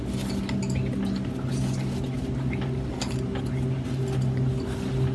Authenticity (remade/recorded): recorded